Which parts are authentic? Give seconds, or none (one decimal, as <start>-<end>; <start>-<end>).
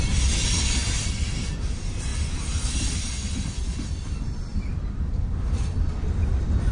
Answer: 0.0-6.7